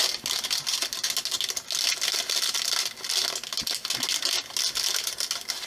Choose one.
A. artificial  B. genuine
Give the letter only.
B